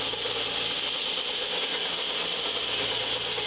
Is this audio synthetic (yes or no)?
no